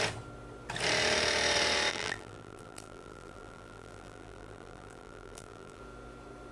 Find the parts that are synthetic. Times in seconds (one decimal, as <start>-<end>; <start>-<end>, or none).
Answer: 1.9-5.8